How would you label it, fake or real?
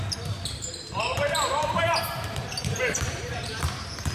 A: fake